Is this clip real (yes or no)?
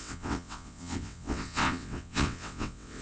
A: no